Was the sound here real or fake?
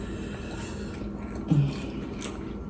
real